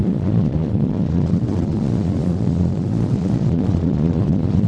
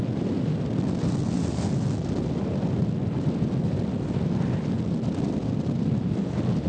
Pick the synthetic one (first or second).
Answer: first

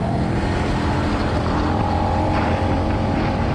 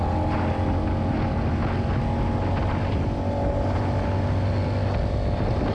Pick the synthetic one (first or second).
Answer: first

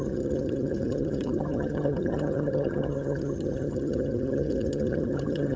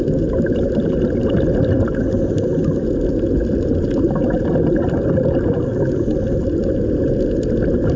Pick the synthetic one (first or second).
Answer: first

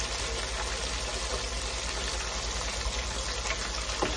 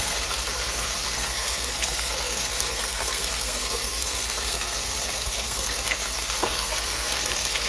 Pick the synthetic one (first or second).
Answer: second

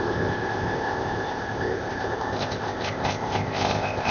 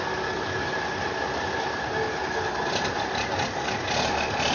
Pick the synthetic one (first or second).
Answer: first